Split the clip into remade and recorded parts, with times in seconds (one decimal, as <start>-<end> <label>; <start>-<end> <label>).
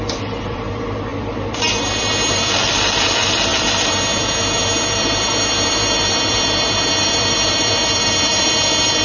0.0-9.0 remade